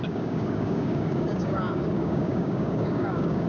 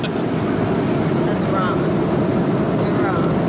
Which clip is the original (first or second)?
second